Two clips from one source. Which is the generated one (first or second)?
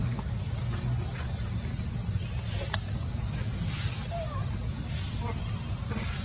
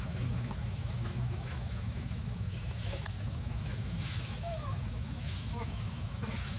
second